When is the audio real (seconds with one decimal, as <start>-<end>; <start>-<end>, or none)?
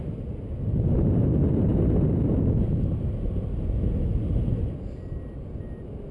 0.0-6.1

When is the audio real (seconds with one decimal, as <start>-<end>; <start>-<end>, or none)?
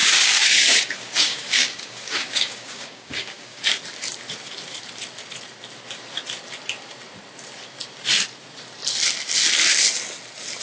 3.7-10.6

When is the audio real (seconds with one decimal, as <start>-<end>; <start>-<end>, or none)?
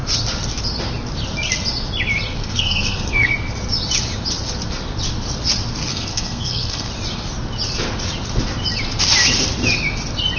0.0-2.4; 3.3-5.9; 6.9-10.4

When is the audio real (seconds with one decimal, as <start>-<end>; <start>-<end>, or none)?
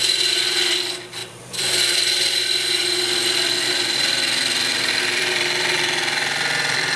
none